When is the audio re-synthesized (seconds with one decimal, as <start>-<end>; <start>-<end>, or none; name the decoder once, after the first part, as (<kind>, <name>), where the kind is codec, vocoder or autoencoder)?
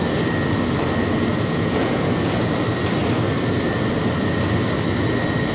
1.3-2.5 (vocoder, Vocos)